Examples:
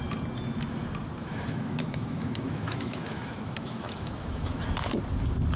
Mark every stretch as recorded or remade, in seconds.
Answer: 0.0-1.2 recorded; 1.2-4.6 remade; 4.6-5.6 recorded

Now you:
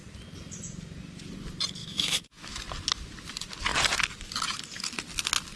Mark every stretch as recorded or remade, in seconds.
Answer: 0.0-1.8 recorded; 1.8-2.6 remade; 2.6-5.6 recorded

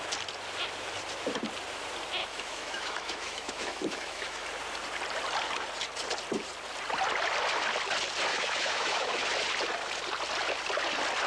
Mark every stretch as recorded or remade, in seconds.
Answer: 0.0-2.2 recorded; 2.2-4.5 remade; 4.5-8.3 recorded; 8.3-9.2 remade; 9.2-11.3 recorded

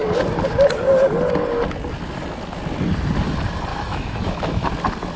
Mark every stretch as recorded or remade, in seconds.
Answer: 0.0-3.7 recorded; 3.7-4.7 remade; 4.7-5.2 recorded

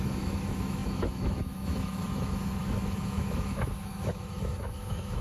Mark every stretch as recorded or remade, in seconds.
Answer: 0.0-5.2 remade

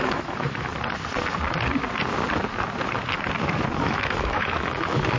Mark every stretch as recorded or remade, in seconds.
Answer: 0.0-0.7 remade; 0.7-3.8 recorded; 3.8-5.2 remade

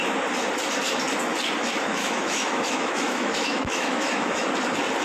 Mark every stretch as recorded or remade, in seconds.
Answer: 0.0-1.9 recorded; 1.9-4.5 remade; 4.5-5.0 recorded

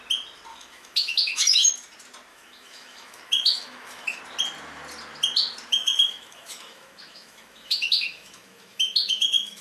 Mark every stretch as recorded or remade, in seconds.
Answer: 0.0-0.5 recorded; 0.5-1.7 remade; 1.7-2.3 recorded; 2.3-4.2 remade; 4.2-5.7 recorded; 5.7-9.6 remade